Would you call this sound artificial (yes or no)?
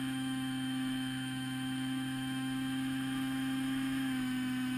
yes